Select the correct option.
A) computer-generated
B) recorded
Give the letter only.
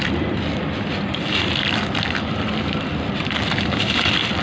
B